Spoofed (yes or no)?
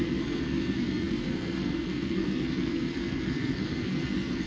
yes